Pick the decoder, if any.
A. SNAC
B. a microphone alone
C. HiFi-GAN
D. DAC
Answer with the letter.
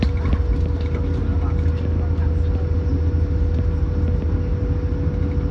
B